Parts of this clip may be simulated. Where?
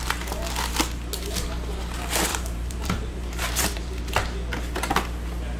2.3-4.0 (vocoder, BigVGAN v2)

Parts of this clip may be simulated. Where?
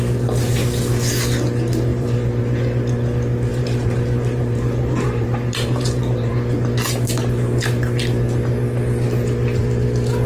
1.9-2.4 (vocoder, BigVGAN v2); 3.5-6.3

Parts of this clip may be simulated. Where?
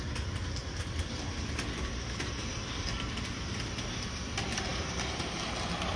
0.6-1.2 (vocoder, BigVGAN v2); 4.7-5.5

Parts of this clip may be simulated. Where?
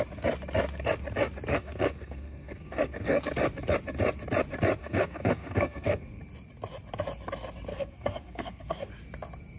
1.5-3.2 (codec, SNAC); 4.8-6.2; 7.7-8.9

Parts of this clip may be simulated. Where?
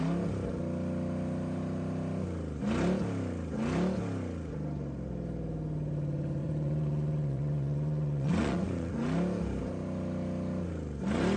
6.4-8.9 (vocoder, Vocos)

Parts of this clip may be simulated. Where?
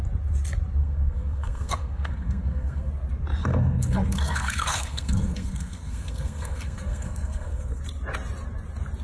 0.8-2.9 (codec, SNAC); 3.4-7.8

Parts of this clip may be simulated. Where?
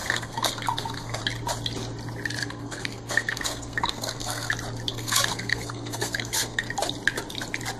0.0-1.2 (codec, SNAC); 2.4-4.5; 4.9-6.7